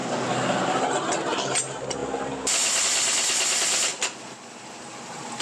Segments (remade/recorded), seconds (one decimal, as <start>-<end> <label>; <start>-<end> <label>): 0.0-5.4 recorded